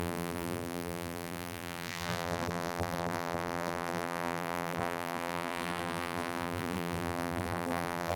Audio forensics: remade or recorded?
remade